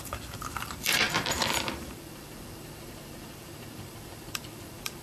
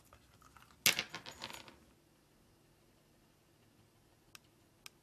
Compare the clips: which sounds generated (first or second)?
first